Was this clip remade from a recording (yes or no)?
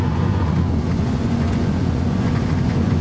yes